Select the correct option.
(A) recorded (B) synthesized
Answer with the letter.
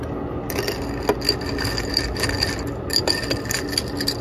A